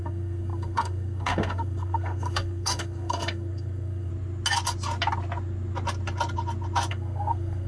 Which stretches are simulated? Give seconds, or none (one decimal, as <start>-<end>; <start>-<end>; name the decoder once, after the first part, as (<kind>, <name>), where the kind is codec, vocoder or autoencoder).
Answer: 0.0-4.1 (codec, SNAC); 6.9-7.7